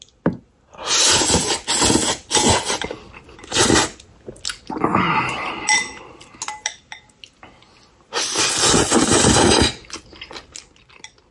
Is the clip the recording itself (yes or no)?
yes